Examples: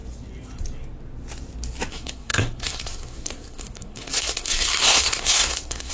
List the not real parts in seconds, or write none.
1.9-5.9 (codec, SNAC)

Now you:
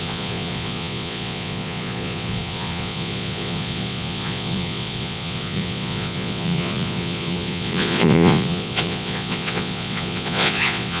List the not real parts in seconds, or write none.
0.0-11.0 (vocoder, Vocos)

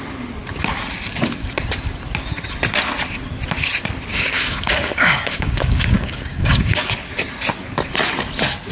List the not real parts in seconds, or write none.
4.1-6.9 (codec, DAC)

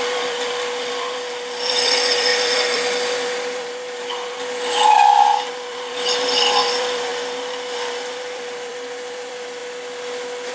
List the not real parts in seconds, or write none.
0.0-9.6 (vocoder, BigVGAN v2)

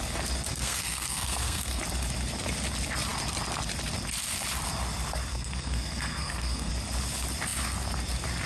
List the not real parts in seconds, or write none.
0.5-1.8 (codec, SNAC); 5.3-6.7

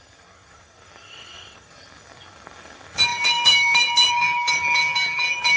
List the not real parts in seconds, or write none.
0.0-5.6 (codec, DAC)

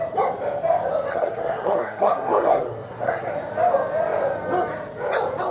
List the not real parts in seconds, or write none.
1.1-3.3 (codec, SNAC)

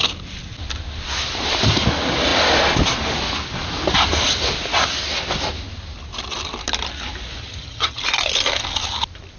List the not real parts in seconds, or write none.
7.4-8.0 (vocoder, HiFi-GAN)